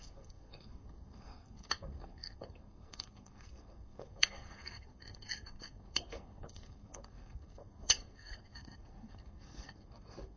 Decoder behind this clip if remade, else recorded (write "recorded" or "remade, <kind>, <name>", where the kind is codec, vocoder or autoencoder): remade, codec, SNAC